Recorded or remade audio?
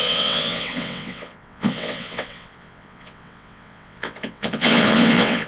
remade